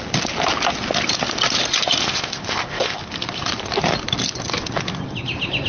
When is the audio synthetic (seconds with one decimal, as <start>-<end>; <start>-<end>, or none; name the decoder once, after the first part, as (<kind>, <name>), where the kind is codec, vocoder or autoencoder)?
2.0-3.0 (codec, ZipCodec)